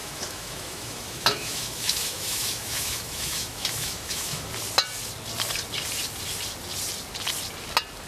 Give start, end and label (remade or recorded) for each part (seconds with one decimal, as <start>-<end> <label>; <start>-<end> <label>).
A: 0.0-4.5 remade; 4.5-8.1 recorded